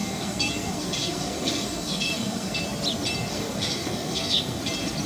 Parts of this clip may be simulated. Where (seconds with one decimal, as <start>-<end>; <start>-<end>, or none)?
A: 0.0-2.6; 3.3-4.6